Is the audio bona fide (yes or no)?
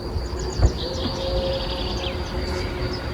yes